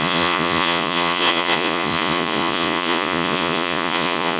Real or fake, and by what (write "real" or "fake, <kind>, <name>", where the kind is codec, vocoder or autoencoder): fake, vocoder, Vocos